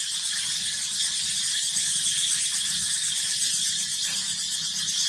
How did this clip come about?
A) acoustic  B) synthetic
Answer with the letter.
A